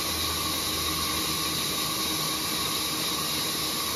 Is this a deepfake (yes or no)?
no